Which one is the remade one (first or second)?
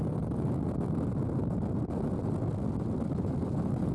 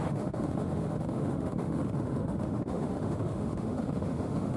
second